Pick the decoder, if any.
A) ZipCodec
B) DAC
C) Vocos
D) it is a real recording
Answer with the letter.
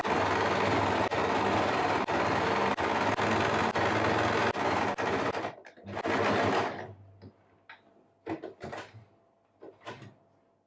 D